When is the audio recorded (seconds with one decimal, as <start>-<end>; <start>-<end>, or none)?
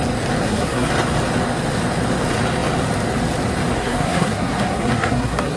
0.0-0.4; 0.9-3.8